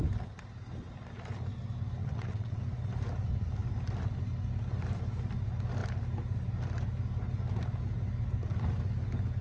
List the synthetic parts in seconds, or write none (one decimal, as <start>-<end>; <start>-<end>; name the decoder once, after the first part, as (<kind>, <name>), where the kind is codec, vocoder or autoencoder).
2.0-2.6 (vocoder, WaveNeXt)